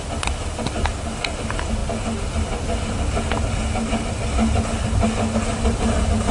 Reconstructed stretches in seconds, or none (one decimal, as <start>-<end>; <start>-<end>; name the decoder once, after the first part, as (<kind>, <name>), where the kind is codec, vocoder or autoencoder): none